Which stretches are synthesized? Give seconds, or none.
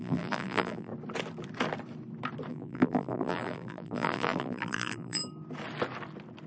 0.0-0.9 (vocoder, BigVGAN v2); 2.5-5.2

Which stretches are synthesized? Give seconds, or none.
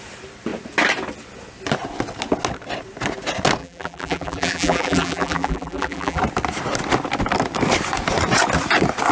3.6-6.2 (vocoder, BigVGAN v2)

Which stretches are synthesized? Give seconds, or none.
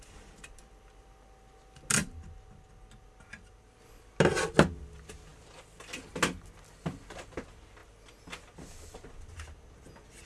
5.3-6.1 (vocoder, BigVGAN v2)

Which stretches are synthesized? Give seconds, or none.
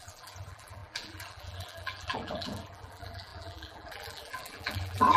0.0-5.2 (vocoder, BigVGAN v2)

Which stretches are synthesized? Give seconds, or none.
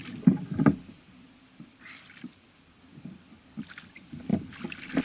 0.8-4.3 (vocoder, BigVGAN v2)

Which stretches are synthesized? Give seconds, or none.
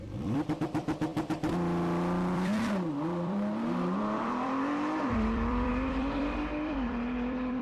0.0-7.6 (vocoder, BigVGAN v2)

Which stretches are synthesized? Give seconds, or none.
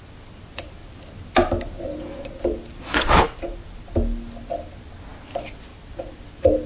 none